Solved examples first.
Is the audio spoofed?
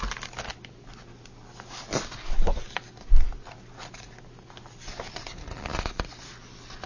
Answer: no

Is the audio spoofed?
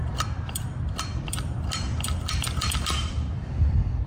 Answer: yes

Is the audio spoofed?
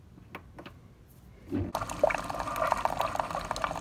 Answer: no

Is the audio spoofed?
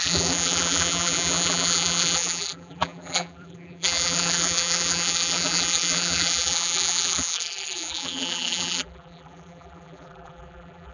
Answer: yes